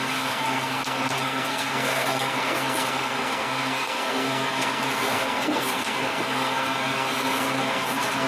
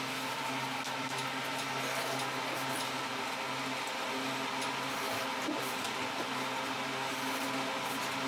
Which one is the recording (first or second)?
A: second